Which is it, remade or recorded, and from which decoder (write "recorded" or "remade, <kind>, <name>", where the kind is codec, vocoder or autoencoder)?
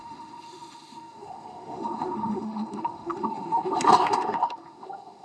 remade, autoencoder, DAC-VAE